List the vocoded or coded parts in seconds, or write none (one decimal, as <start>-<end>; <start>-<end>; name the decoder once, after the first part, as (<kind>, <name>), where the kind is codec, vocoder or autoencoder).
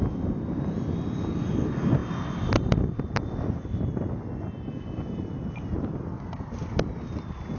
none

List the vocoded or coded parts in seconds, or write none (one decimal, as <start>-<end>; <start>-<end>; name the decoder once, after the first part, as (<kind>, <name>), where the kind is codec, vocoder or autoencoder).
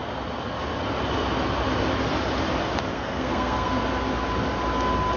2.9-3.8 (codec, SNAC)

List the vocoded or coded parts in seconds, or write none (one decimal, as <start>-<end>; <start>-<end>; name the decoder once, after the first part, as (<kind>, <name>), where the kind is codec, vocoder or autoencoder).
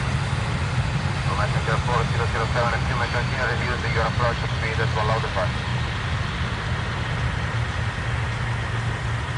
none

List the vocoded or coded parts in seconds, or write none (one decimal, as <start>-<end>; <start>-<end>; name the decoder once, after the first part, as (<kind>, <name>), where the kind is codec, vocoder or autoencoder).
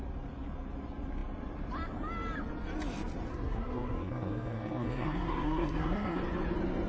3.3-6.2 (codec, SNAC)